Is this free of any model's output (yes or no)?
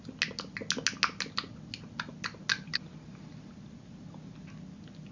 yes